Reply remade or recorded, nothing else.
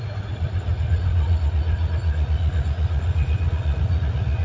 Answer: remade